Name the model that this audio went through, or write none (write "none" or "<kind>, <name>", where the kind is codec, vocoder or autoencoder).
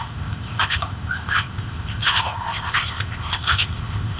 codec, ZipCodec